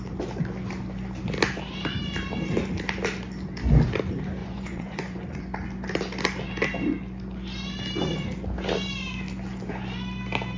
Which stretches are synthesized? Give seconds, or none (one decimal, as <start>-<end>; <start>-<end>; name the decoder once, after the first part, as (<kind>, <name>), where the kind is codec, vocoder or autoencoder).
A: 4.4-5.4 (vocoder, Vocos)